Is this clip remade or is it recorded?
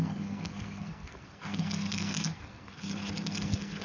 remade